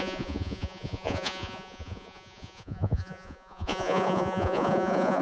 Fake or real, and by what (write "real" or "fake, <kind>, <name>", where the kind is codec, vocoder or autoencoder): fake, vocoder, Vocos